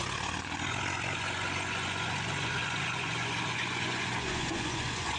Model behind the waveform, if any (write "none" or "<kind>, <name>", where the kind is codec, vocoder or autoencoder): vocoder, Vocos